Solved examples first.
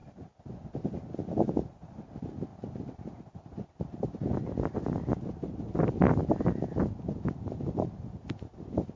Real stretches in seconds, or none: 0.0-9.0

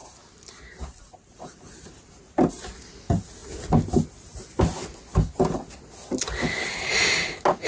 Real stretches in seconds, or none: 2.5-7.7

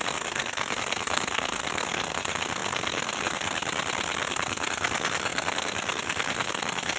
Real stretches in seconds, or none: 3.6-4.3